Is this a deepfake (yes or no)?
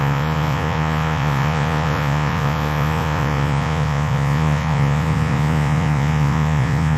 yes